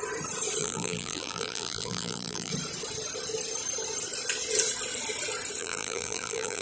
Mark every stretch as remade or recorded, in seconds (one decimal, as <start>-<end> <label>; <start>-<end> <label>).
0.0-0.6 recorded; 0.6-2.5 remade; 2.5-5.6 recorded; 5.6-6.6 remade